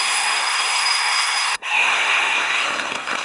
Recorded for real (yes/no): no